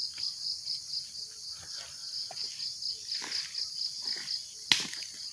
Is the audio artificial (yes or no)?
no